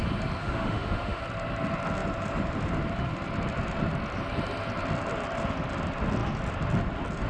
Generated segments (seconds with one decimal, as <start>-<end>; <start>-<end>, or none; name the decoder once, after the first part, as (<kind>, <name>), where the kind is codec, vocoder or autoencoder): 0.4-1.2 (autoencoder, DAC-VAE)